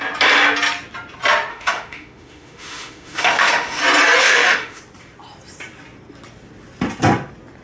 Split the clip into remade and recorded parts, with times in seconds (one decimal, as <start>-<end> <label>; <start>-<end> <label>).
0.0-1.5 recorded; 1.5-3.8 remade; 3.8-4.2 recorded; 4.2-4.8 remade; 4.8-7.6 recorded